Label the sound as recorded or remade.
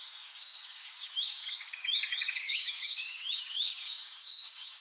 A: remade